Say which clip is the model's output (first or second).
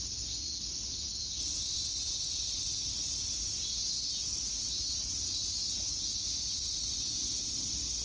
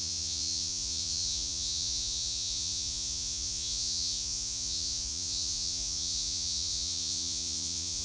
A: second